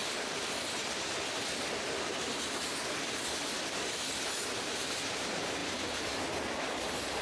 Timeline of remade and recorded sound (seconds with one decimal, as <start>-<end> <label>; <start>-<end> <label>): 0.0-7.2 recorded